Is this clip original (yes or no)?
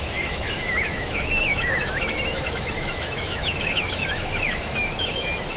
no